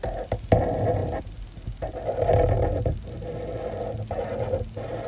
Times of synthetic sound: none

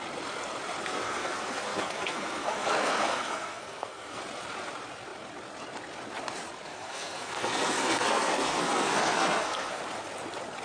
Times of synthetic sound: 0.8-4.2 (codec, SNAC); 6.7-9.8